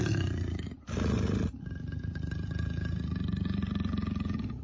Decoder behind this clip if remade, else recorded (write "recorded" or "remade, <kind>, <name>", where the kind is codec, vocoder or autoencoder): recorded